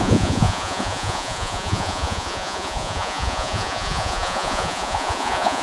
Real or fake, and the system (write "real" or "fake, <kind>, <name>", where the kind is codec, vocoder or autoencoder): fake, vocoder, Vocos